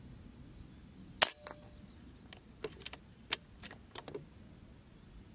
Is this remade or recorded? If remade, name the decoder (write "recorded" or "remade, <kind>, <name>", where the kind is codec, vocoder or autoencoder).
recorded